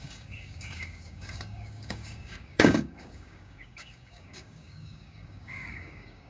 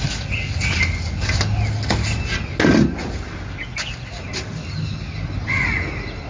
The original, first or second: second